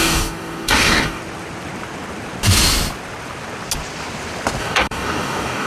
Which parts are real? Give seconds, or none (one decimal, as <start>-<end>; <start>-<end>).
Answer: 1.2-4.6